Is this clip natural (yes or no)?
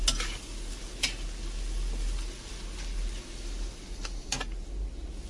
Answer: yes